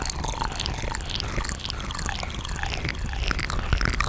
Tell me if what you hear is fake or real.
real